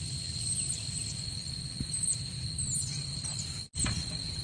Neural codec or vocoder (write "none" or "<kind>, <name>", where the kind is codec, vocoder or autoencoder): none